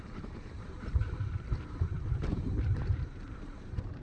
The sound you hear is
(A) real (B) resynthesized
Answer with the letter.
B